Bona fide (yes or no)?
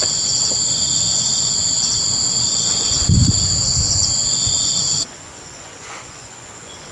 no